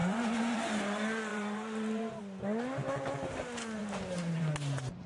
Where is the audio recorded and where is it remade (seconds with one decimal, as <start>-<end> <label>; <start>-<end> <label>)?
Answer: 0.0-0.6 remade; 0.6-1.3 recorded; 1.3-2.2 remade; 2.2-3.8 recorded; 3.8-4.5 remade; 4.5-5.1 recorded